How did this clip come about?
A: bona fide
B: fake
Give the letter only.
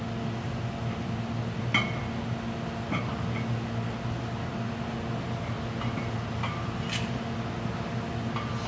A